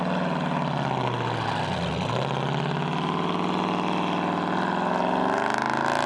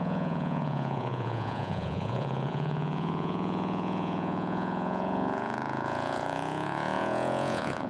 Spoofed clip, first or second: second